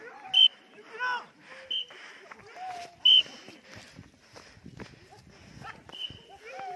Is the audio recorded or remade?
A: recorded